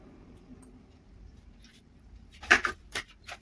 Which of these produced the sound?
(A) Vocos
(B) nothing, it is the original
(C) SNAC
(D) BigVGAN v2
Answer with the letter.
D